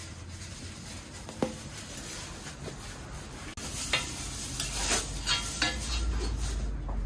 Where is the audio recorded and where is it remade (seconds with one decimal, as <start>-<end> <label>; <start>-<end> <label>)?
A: 0.0-7.1 recorded